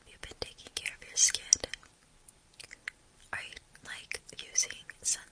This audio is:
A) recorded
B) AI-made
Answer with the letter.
A